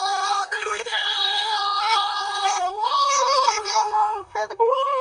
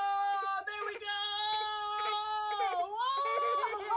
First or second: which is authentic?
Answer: second